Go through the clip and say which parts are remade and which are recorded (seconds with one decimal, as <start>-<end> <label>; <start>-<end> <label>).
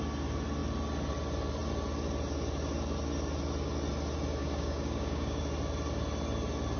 0.0-4.4 recorded; 4.4-5.4 remade; 5.4-6.8 recorded